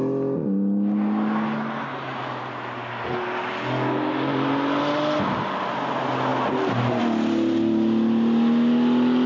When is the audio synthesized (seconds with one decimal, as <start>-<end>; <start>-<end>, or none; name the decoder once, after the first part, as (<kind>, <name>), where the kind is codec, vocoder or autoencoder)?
none